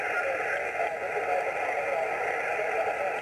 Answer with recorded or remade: recorded